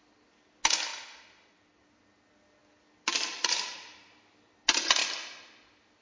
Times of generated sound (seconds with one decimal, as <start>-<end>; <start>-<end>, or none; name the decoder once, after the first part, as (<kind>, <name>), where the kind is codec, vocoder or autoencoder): none